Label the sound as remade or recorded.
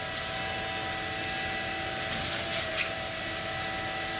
recorded